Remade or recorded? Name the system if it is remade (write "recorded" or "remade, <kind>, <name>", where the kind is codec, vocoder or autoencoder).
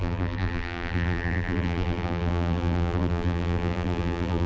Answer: remade, vocoder, BigVGAN v2